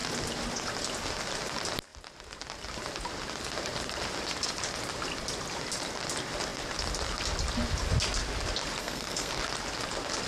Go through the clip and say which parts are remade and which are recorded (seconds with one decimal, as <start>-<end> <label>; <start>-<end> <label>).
0.0-8.8 recorded; 8.8-9.3 remade; 9.3-10.3 recorded